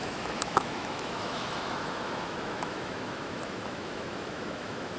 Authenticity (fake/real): fake